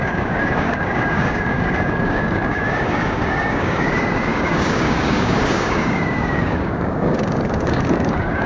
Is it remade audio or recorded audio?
remade